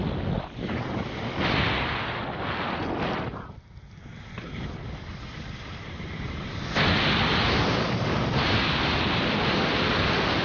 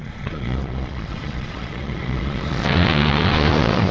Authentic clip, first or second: first